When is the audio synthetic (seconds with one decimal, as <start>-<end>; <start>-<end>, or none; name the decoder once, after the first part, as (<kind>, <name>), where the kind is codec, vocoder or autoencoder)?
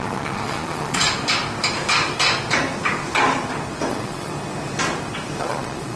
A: 0.0-1.1 (vocoder, Vocos); 3.9-4.3; 5.4-6.0